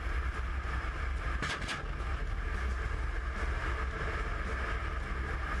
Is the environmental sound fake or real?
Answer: real